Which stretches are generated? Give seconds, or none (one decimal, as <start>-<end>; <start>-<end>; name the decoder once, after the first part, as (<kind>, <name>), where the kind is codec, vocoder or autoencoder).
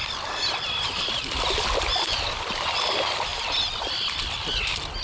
0.0-2.5 (vocoder, BigVGAN v2); 3.3-4.0